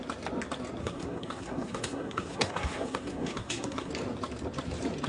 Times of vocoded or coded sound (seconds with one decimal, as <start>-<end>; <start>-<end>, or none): 0.8-3.9